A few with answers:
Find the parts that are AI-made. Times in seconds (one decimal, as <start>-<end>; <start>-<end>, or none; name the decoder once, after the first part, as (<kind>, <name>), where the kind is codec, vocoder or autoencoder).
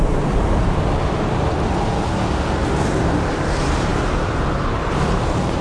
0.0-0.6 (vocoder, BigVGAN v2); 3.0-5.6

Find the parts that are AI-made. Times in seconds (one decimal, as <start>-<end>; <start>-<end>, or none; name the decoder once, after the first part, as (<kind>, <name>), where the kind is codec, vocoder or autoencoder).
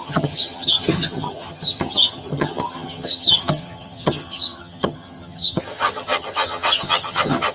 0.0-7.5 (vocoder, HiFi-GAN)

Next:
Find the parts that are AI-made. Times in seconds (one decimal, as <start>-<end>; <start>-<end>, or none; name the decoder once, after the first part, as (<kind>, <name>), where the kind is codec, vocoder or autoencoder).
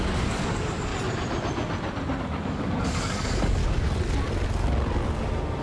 0.0-0.9 (codec, DAC); 2.2-3.6